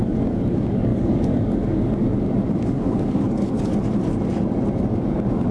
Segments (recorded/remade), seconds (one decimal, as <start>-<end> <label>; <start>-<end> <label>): 0.0-3.7 remade; 3.7-4.9 recorded; 4.9-5.5 remade